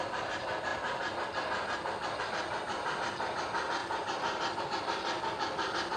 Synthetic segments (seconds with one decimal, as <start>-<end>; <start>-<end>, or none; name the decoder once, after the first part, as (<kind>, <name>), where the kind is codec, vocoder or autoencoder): 0.0-0.7 (vocoder, BigVGAN v2); 2.2-3.8; 4.6-6.0